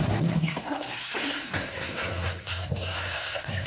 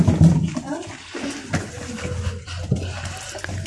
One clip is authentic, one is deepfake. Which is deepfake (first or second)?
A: first